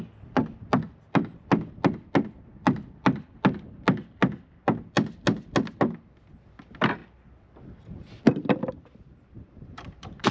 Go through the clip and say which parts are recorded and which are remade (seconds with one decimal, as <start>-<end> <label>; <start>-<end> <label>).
0.0-9.4 recorded; 9.4-10.3 remade

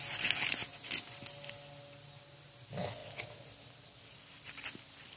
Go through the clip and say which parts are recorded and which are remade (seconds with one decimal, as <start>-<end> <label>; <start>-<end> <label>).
0.0-5.2 recorded

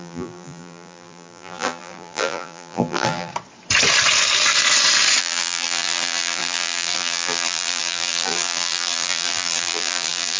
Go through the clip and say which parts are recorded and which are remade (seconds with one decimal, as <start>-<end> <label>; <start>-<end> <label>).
0.0-3.3 remade; 3.3-5.2 recorded; 5.2-10.4 remade